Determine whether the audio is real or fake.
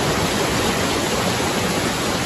fake